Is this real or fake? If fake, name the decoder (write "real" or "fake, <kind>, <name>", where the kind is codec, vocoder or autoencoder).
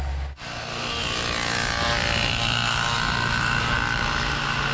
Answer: real